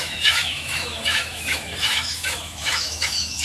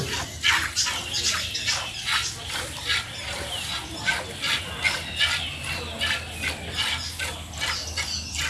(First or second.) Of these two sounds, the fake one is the first